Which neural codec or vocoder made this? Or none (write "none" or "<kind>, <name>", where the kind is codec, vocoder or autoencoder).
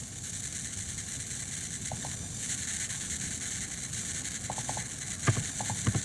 none